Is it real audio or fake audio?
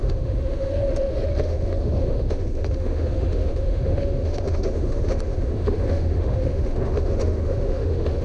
fake